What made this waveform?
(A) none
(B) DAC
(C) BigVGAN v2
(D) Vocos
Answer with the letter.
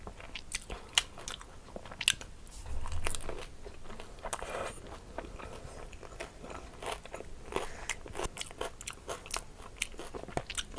A